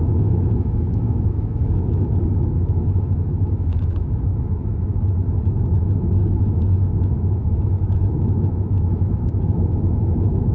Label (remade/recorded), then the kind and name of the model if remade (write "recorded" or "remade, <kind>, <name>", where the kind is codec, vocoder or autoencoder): remade, autoencoder, DAC-VAE